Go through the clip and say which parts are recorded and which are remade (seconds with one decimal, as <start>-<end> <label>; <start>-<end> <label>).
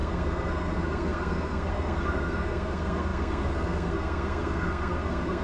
0.0-5.4 remade